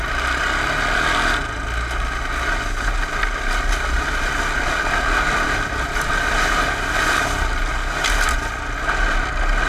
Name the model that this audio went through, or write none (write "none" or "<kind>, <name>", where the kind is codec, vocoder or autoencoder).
none